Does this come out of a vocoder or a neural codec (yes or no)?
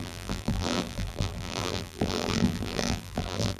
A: yes